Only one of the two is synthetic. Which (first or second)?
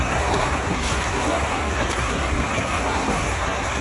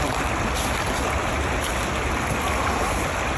first